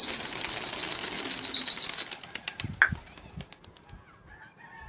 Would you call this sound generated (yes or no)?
no